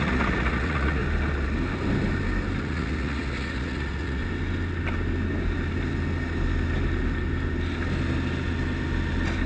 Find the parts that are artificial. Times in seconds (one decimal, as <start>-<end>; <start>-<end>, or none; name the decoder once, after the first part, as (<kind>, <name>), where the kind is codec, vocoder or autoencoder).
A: 0.0-1.0 (vocoder, Vocos); 2.6-4.2